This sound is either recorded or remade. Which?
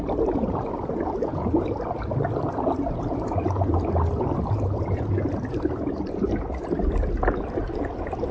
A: recorded